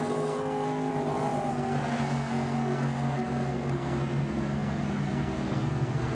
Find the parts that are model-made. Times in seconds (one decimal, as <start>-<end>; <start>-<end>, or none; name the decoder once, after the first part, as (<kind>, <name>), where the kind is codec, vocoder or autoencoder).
0.0-0.9 (codec, SNAC); 1.5-6.1